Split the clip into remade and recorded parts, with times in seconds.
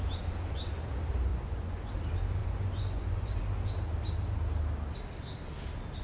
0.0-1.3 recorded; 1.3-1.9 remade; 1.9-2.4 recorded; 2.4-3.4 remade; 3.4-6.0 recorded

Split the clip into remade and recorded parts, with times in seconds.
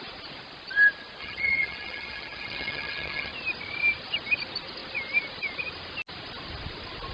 0.0-1.2 recorded; 1.2-3.3 remade; 3.3-7.1 recorded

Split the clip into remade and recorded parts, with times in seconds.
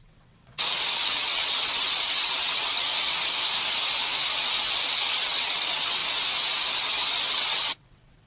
0.0-2.9 remade; 2.9-4.7 recorded; 4.7-6.0 remade; 6.0-7.3 recorded; 7.3-8.3 remade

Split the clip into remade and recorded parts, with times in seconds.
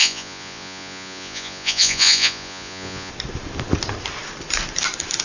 0.0-3.1 remade; 3.1-5.2 recorded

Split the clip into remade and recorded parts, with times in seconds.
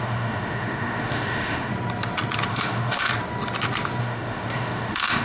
0.0-1.7 remade; 1.7-2.5 recorded; 2.5-3.1 remade; 3.1-4.0 recorded; 4.0-5.2 remade